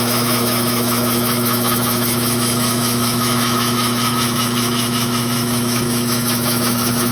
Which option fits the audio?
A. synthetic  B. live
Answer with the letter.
A